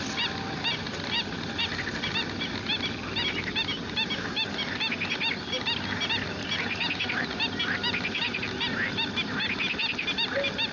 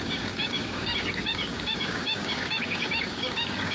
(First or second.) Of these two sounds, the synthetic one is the second